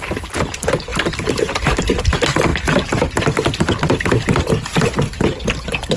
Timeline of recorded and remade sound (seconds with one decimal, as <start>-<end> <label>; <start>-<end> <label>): 0.0-6.0 recorded